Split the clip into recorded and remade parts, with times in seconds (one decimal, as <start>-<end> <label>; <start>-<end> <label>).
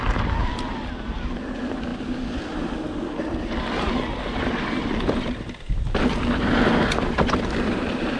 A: 0.0-0.4 recorded; 0.4-0.9 remade; 0.9-8.2 recorded